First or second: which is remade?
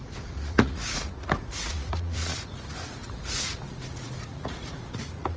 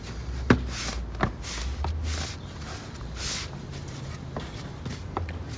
first